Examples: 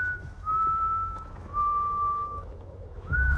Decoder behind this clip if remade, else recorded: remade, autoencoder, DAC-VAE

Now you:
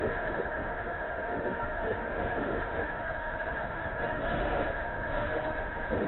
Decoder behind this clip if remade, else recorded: remade, autoencoder, DAC-VAE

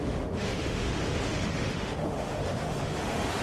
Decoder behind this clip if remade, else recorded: remade, autoencoder, DAC-VAE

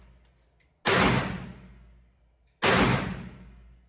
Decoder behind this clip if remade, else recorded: recorded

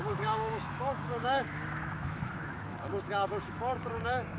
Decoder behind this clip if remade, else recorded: remade, autoencoder, DAC-VAE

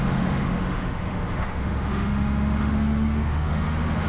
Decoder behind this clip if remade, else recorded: remade, autoencoder, DAC-VAE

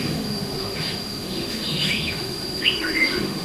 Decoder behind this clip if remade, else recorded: remade, autoencoder, DAC-VAE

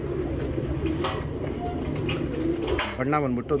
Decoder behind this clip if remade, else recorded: recorded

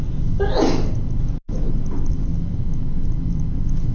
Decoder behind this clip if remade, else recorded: recorded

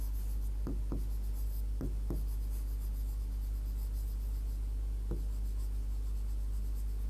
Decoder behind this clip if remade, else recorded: recorded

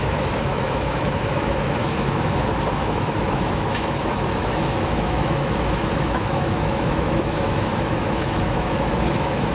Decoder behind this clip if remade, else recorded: remade, autoencoder, DAC-VAE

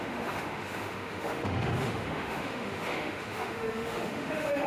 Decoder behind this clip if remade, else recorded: remade, autoencoder, DAC-VAE